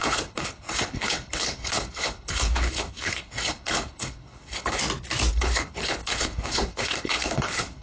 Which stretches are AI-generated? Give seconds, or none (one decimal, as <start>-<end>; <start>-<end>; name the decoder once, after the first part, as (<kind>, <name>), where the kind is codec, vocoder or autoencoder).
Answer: 0.0-4.8 (codec, HILCodec); 5.3-7.8